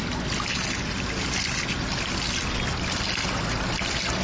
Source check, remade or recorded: recorded